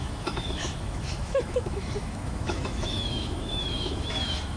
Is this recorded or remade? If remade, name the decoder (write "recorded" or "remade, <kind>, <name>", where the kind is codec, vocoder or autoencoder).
remade, autoencoder, DAC-VAE